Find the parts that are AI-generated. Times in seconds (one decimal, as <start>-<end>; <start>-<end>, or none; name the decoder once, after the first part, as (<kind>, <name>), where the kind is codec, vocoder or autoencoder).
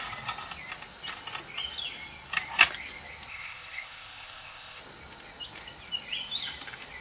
3.3-4.8 (codec, ZipCodec)